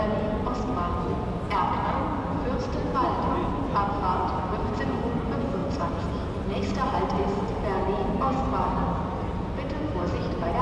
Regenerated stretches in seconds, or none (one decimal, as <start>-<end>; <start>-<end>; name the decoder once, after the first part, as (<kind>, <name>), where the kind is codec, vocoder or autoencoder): none